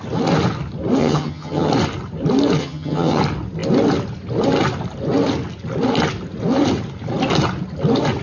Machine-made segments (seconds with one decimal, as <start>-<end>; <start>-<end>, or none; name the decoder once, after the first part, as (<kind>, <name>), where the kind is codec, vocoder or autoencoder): 1.0-1.7 (vocoder, HiFi-GAN); 2.6-3.2